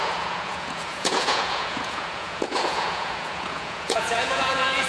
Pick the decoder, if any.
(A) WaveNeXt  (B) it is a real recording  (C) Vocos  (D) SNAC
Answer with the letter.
C